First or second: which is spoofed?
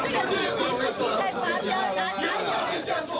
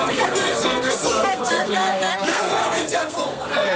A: second